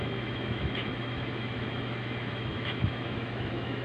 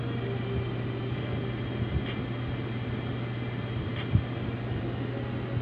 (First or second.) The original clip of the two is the second